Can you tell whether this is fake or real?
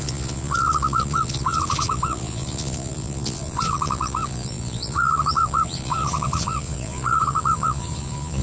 fake